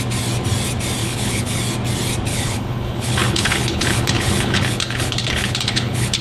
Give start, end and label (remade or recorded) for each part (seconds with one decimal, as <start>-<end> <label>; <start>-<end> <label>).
0.0-1.0 recorded; 1.0-1.6 remade; 1.6-2.3 recorded; 2.3-6.2 remade

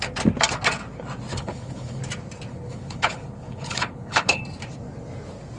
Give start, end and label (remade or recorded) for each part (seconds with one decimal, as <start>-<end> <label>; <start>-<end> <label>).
0.0-1.3 recorded; 1.3-2.0 remade; 2.0-2.5 recorded; 2.5-4.4 remade; 4.4-5.6 recorded

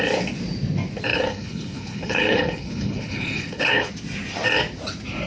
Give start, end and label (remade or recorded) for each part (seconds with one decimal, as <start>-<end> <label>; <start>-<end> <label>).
0.0-1.1 recorded; 1.1-3.9 remade; 3.9-5.3 recorded

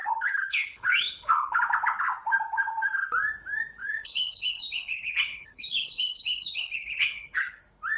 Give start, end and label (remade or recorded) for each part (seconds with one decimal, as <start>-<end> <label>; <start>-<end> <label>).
0.0-1.6 remade; 1.6-3.8 recorded; 3.8-7.6 remade; 7.6-8.0 recorded

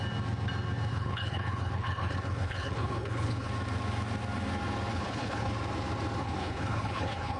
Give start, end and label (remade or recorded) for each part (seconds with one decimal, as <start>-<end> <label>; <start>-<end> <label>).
0.0-0.9 recorded; 0.9-3.5 remade; 3.5-4.9 recorded; 4.9-5.5 remade; 5.5-6.2 recorded; 6.2-7.4 remade